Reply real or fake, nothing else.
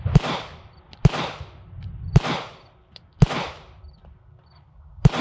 real